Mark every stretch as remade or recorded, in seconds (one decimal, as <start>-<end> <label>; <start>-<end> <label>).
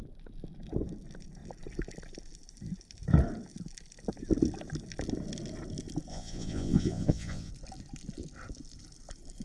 0.0-6.1 recorded; 6.1-7.5 remade; 7.5-9.4 recorded